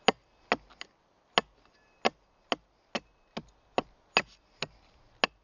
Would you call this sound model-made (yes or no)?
no